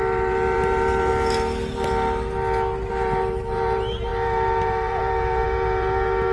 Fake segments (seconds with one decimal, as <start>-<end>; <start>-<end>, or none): 0.0-1.1; 2.9-6.3